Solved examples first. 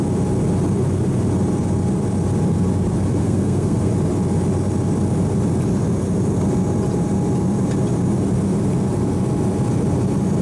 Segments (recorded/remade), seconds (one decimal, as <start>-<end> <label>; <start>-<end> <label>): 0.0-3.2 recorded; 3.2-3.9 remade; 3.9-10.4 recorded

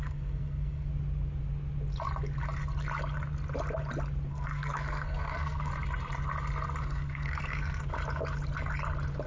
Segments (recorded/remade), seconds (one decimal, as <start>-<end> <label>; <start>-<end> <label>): 0.0-0.9 remade; 0.9-4.3 recorded; 4.3-5.7 remade; 5.7-6.8 recorded; 6.8-7.8 remade; 7.8-9.3 recorded

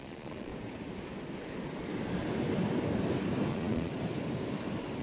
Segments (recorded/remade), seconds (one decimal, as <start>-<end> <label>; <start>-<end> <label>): 0.0-0.5 remade; 0.5-3.5 recorded; 3.5-3.9 remade; 3.9-5.0 recorded

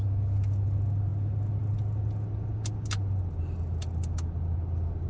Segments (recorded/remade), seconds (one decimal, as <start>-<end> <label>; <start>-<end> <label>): 0.0-5.1 recorded

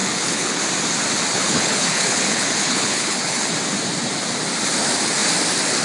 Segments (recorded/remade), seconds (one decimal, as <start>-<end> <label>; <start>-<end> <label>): 0.0-0.6 remade; 0.6-1.3 recorded; 1.3-3.5 remade; 3.5-5.8 recorded

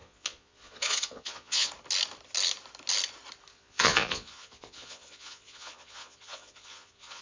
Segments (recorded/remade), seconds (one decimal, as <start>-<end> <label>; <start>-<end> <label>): 0.0-1.7 remade; 1.7-3.5 recorded; 3.5-7.2 remade

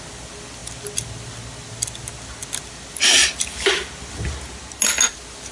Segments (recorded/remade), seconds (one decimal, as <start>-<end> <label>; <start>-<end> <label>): 0.0-5.5 recorded